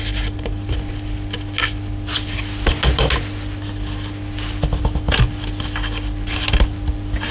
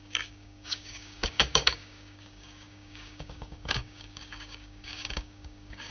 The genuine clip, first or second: first